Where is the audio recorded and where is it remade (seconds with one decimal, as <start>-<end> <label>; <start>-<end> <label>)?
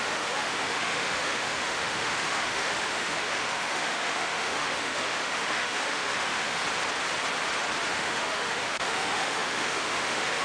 0.0-6.6 remade; 6.6-7.9 recorded; 7.9-10.4 remade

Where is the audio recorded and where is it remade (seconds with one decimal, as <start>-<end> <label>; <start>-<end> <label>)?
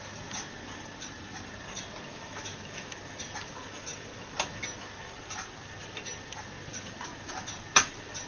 0.0-2.1 recorded; 2.1-3.0 remade; 3.0-8.3 recorded